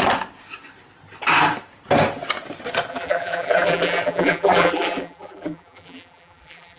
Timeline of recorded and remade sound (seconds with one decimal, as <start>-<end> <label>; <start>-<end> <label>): 0.0-2.9 recorded; 2.9-6.8 remade